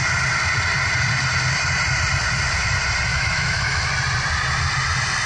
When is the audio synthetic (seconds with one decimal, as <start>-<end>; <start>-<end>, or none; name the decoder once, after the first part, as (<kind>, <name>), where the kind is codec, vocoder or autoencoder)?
3.1-3.9 (autoencoder, DAC-VAE)